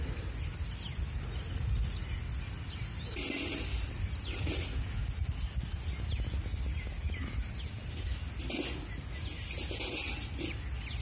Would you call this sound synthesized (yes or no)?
no